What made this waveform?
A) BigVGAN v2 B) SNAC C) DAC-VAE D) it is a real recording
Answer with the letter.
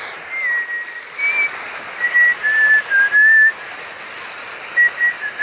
D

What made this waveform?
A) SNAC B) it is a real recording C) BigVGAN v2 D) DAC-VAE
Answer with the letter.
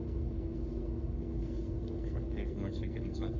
A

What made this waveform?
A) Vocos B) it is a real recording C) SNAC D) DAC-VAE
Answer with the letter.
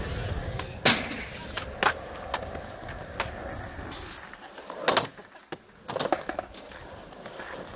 B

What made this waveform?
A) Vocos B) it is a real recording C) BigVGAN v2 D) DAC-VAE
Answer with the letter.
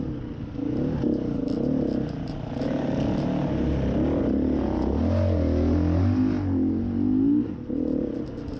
B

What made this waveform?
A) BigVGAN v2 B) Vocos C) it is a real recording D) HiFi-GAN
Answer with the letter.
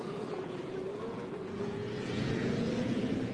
B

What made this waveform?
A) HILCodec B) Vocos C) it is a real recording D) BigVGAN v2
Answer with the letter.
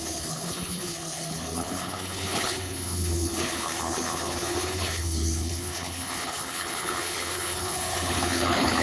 A